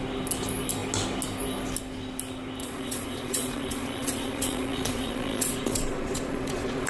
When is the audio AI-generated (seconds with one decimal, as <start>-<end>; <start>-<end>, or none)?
2.6-6.9